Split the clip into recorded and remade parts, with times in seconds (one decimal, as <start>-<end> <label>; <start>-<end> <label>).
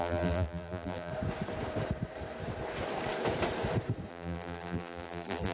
0.0-1.1 remade; 1.1-4.1 recorded; 4.1-5.5 remade